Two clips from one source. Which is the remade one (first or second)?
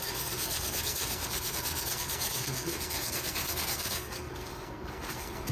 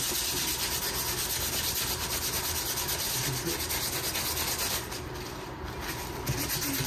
first